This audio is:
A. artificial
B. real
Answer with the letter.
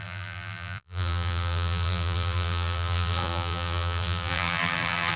A